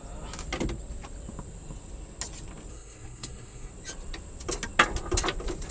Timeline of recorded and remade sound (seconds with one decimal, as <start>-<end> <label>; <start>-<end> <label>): 0.0-2.7 recorded; 2.7-3.7 remade; 3.7-5.7 recorded